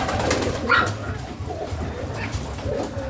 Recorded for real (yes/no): yes